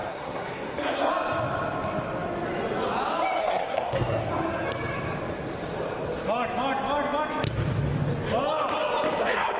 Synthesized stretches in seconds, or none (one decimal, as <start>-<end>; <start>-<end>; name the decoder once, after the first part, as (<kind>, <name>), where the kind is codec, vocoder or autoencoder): 0.0-1.1 (codec, SNAC); 3.4-4.2; 9.2-9.6